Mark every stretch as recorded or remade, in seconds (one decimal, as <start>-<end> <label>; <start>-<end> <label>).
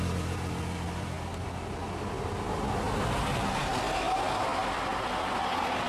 0.0-5.9 recorded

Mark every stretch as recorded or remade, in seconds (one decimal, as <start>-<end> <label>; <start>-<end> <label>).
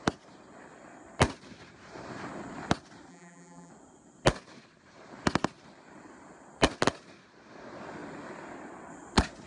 0.0-3.1 recorded; 3.1-3.7 remade; 3.7-9.5 recorded